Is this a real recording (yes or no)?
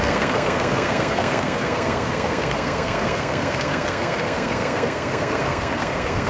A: no